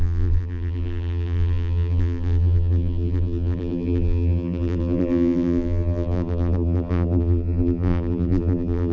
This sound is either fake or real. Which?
fake